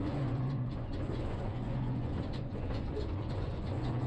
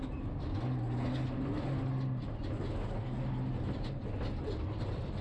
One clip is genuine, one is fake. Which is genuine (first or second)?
second